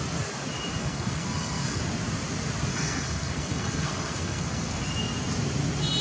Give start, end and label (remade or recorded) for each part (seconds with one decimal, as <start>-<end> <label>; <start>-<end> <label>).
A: 0.0-0.8 recorded; 0.8-1.8 remade; 1.8-2.7 recorded; 2.7-4.9 remade; 4.9-6.0 recorded